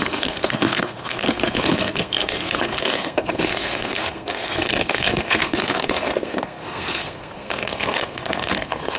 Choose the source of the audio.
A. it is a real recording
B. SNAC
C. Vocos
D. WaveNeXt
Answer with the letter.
B